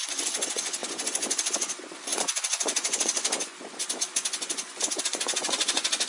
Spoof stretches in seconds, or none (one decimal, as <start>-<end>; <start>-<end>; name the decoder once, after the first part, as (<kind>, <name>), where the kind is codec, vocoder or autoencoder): 0.0-6.1 (vocoder, Vocos)